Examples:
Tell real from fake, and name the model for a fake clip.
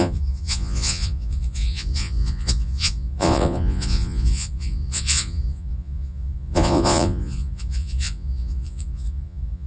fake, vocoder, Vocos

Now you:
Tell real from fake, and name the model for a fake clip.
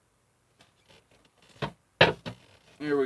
real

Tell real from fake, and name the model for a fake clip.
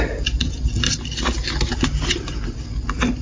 real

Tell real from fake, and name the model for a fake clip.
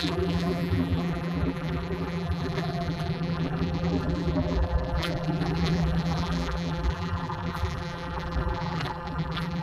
fake, vocoder, BigVGAN v2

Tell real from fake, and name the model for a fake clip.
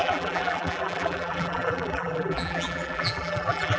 fake, vocoder, BigVGAN v2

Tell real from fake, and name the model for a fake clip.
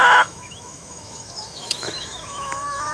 fake, autoencoder, DAC-VAE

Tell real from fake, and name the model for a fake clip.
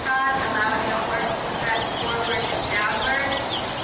real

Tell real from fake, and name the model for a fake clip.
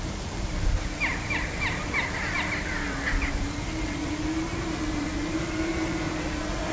real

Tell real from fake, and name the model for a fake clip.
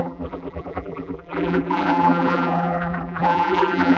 fake, vocoder, BigVGAN v2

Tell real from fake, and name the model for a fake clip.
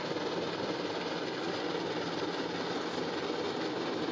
real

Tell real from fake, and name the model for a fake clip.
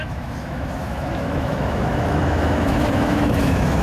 fake, autoencoder, DAC-VAE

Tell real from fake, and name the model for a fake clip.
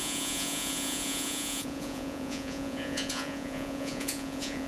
fake, vocoder, Vocos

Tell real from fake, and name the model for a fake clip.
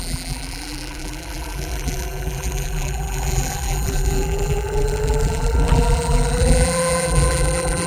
fake, vocoder, BigVGAN v2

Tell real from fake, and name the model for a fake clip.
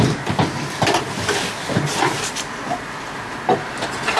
real